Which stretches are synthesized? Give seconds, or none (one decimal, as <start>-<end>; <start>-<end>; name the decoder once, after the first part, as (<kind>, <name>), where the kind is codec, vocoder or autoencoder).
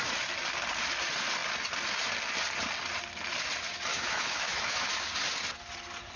3.9-4.9 (autoencoder, DAC-VAE)